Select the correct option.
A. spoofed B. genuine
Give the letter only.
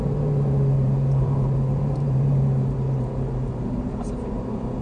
A